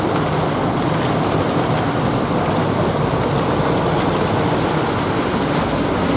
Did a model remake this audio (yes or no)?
no